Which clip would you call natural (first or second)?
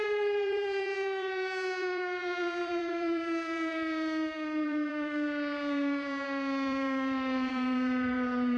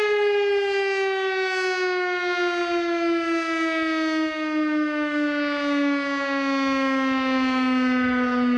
second